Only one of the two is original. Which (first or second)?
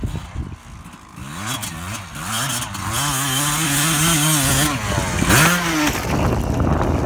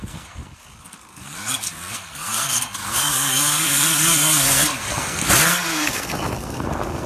first